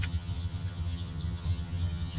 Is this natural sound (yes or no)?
no